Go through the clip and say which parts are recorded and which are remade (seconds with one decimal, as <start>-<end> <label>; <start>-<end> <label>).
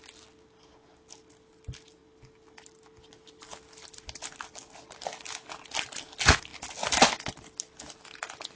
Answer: 0.0-8.6 recorded